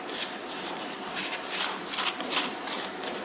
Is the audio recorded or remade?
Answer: remade